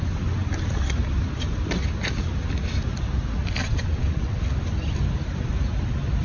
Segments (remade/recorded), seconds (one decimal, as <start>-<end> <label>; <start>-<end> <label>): 0.0-3.6 recorded; 3.6-4.4 remade; 4.4-6.2 recorded